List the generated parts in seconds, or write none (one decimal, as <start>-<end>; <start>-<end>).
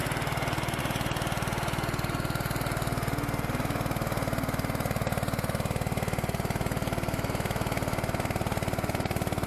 none